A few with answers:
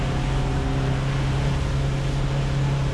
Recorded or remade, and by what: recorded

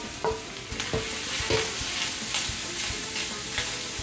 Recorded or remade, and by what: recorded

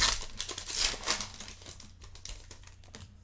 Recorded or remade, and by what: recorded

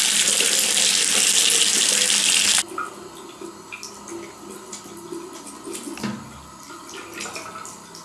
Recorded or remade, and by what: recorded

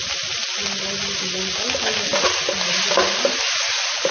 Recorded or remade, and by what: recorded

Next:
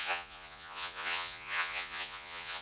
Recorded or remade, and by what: remade, vocoder, Vocos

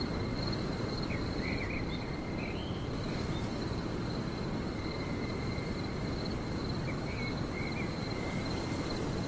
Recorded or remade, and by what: recorded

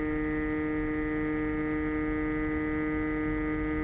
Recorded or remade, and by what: recorded